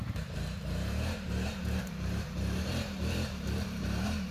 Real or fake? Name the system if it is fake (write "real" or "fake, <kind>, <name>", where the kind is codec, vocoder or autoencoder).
fake, vocoder, BigVGAN v2